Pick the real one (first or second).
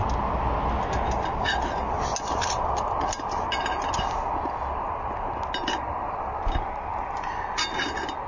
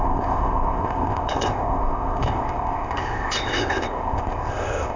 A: first